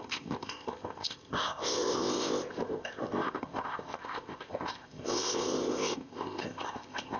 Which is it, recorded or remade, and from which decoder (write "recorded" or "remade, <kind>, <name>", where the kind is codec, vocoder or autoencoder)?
remade, codec, ZipCodec